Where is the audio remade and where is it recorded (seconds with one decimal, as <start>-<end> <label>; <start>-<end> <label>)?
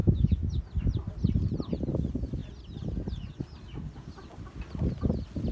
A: 0.0-0.5 remade; 0.5-5.5 recorded